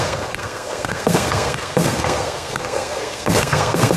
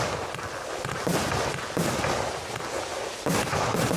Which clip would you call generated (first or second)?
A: first